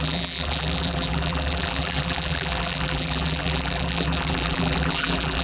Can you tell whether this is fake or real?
fake